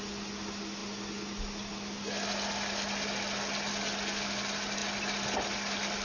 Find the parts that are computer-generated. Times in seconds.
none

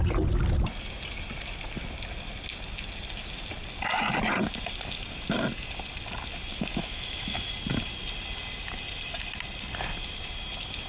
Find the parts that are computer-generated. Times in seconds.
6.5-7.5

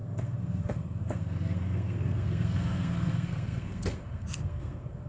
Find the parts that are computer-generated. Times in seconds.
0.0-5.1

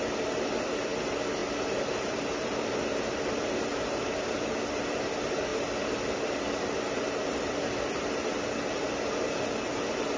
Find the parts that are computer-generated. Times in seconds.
none

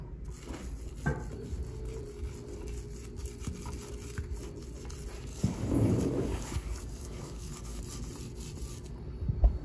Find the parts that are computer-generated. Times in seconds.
5.3-7.8